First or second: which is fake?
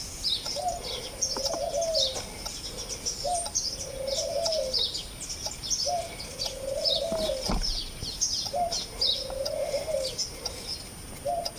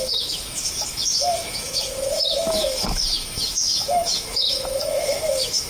second